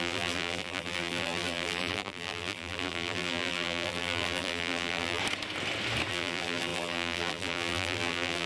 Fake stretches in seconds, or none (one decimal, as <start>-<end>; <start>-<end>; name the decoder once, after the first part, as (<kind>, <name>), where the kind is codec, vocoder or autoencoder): 0.0-5.2 (vocoder, BigVGAN v2); 6.1-8.5